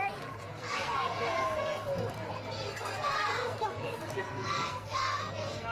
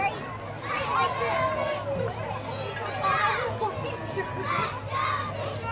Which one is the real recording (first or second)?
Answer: second